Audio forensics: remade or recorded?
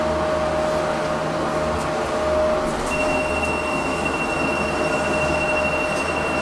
recorded